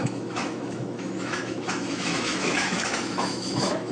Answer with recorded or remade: remade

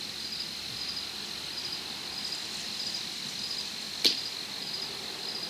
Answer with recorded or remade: recorded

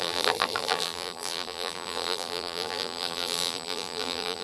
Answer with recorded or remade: remade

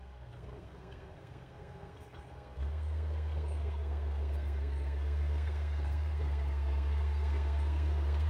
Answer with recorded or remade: remade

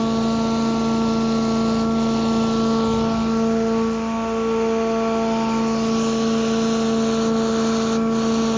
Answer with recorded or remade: recorded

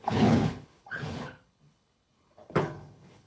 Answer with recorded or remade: remade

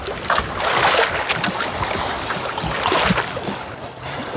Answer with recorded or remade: recorded